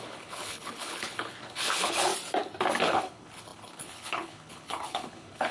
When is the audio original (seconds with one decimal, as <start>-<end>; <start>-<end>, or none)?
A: 2.1-2.9